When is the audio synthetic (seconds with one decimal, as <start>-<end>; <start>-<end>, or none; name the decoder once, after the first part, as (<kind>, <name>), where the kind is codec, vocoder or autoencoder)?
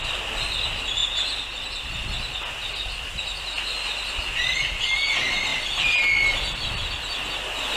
none